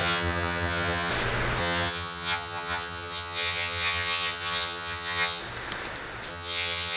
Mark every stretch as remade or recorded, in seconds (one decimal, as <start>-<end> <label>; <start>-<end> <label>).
0.0-1.1 remade; 1.1-1.6 recorded; 1.6-5.4 remade; 5.4-6.3 recorded; 6.3-7.0 remade